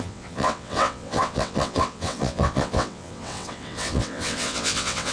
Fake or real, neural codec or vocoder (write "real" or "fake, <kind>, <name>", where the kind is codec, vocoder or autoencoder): fake, vocoder, WaveNeXt